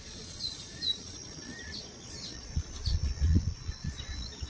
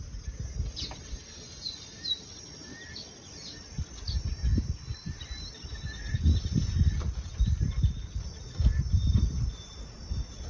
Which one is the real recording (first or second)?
second